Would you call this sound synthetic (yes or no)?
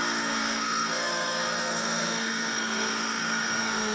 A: yes